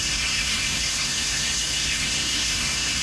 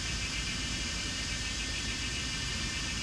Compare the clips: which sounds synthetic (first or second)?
first